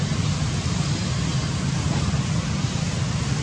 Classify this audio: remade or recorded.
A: recorded